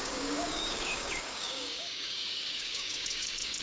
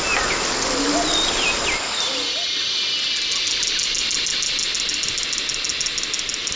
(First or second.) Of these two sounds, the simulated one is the first